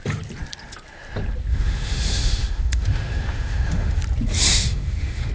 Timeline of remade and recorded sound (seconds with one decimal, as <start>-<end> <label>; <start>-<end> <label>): 0.0-1.5 recorded; 1.5-4.0 remade; 4.0-4.5 recorded; 4.5-5.3 remade